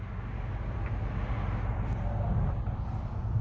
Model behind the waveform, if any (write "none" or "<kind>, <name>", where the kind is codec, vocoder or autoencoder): none